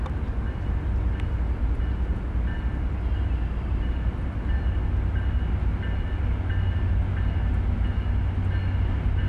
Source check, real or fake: real